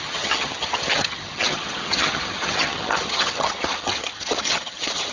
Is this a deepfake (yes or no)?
yes